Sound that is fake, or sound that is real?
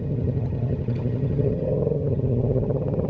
fake